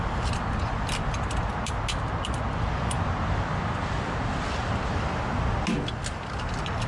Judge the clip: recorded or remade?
recorded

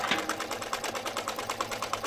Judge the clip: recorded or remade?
remade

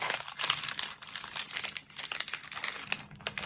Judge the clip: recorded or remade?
recorded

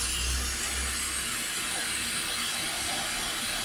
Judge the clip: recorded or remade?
recorded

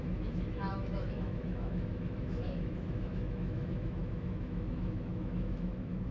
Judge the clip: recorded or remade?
remade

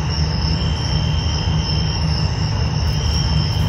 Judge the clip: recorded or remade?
recorded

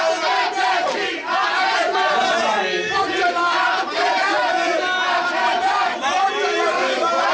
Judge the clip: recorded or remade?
remade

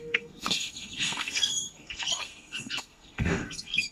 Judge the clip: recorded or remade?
remade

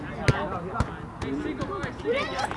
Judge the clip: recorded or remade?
recorded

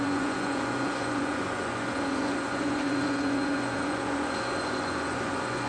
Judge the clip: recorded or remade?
remade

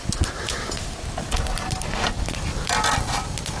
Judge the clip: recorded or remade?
recorded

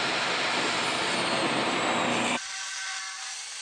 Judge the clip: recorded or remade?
recorded